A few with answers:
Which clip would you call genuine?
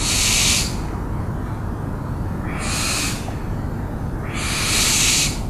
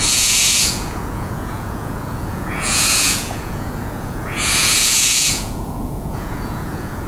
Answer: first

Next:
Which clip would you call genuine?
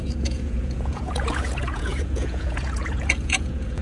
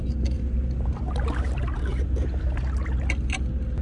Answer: second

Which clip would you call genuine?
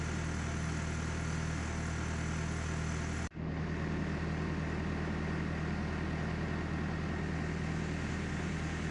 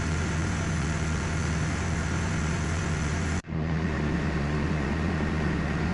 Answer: first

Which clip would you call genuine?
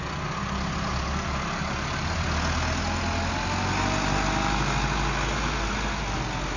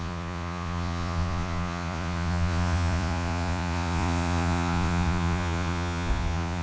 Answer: first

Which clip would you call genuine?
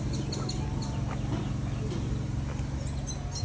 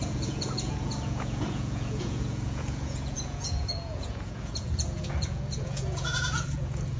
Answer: first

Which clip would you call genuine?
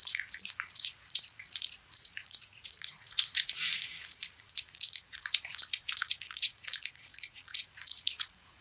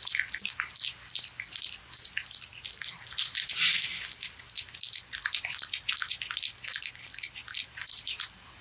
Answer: second